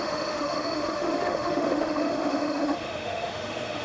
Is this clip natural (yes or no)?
no